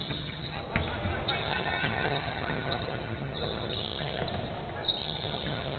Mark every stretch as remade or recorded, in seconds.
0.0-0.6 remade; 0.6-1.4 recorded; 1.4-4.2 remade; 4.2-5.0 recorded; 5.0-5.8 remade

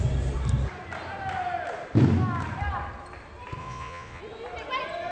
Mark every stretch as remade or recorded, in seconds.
0.0-3.6 recorded; 3.6-4.2 remade; 4.2-5.1 recorded

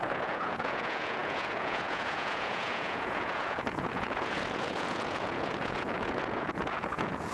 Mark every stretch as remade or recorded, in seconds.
0.0-7.3 remade

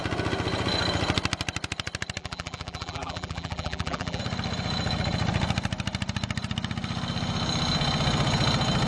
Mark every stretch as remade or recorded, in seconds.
0.0-2.2 recorded; 2.2-4.2 remade; 4.2-8.9 recorded

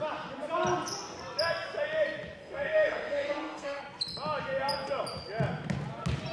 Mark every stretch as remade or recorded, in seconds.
0.0-2.4 recorded; 2.4-3.8 remade; 3.8-6.3 recorded

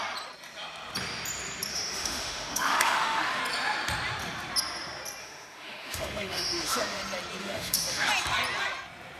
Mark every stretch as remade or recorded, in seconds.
0.0-1.7 recorded; 1.7-3.4 remade; 3.4-5.2 recorded; 5.2-7.0 remade; 7.0-7.4 recorded; 7.4-8.1 remade; 8.1-9.2 recorded

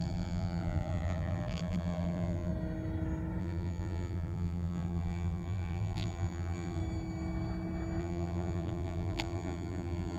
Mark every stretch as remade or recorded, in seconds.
0.0-2.5 remade; 2.5-3.4 recorded; 3.4-6.8 remade; 6.8-8.0 recorded; 8.0-10.2 remade

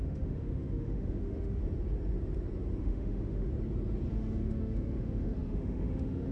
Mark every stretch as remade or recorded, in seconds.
0.0-1.6 remade; 1.6-2.8 recorded; 2.8-3.5 remade; 3.5-4.1 recorded; 4.1-6.3 remade